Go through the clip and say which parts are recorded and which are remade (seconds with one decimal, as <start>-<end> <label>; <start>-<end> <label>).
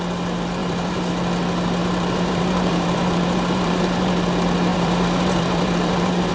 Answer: 0.0-0.6 recorded; 0.6-1.1 remade; 1.1-1.8 recorded; 1.8-4.1 remade; 4.1-4.7 recorded; 4.7-6.3 remade